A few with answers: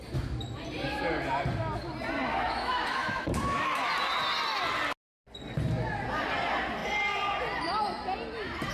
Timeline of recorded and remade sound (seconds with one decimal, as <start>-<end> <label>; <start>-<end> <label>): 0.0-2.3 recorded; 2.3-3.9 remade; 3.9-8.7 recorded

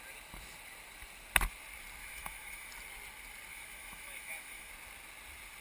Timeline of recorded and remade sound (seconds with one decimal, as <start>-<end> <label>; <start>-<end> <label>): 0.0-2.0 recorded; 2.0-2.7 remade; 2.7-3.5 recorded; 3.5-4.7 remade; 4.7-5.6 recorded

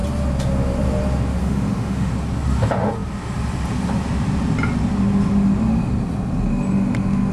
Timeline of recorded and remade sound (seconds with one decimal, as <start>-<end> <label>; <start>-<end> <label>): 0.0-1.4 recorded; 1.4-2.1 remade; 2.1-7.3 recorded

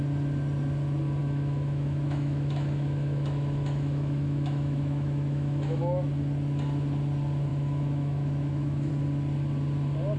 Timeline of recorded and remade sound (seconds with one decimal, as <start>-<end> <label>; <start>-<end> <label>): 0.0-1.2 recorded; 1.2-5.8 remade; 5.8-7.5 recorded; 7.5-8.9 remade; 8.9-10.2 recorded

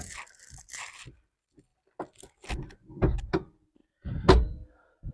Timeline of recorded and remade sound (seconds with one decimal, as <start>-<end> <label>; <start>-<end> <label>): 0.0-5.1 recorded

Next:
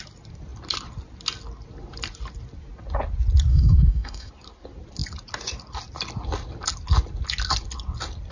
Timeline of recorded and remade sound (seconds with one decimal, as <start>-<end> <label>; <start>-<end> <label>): 0.0-3.5 recorded; 3.5-4.3 remade; 4.3-8.3 recorded

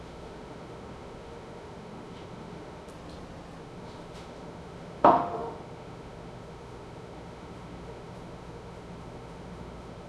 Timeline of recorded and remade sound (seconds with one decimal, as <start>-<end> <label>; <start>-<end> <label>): 0.0-2.9 remade; 2.9-3.6 recorded; 3.6-10.1 remade

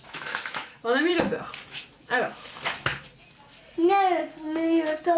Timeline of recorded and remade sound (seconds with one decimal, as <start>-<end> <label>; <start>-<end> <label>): 0.0-1.1 remade; 1.1-1.7 recorded; 1.7-2.9 remade; 2.9-5.2 recorded